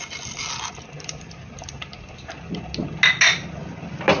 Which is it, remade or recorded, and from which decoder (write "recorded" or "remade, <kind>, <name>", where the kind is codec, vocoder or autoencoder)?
recorded